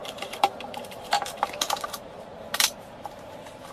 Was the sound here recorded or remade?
remade